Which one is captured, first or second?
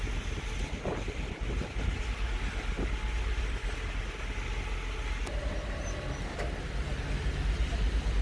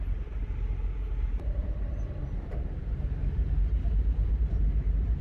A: first